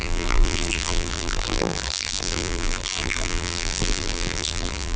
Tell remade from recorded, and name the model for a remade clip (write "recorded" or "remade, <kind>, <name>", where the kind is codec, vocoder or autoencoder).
remade, vocoder, BigVGAN v2